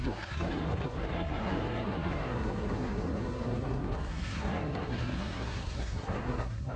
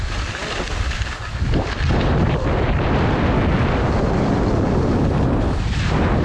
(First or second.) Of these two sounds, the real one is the second